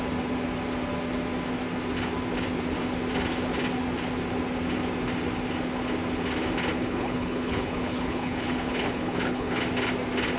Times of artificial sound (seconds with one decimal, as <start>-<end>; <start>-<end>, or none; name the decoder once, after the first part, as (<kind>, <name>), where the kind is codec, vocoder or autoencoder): 6.7-9.6 (codec, HILCodec)